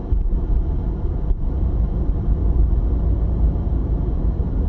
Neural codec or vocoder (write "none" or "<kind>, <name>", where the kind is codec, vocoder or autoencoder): vocoder, BigVGAN v2